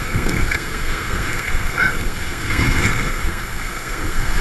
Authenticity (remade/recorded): remade